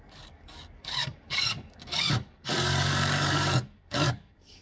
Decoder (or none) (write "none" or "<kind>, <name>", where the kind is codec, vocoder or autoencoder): codec, DAC